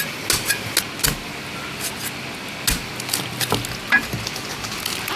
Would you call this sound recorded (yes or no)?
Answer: yes